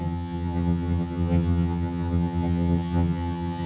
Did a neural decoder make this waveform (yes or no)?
yes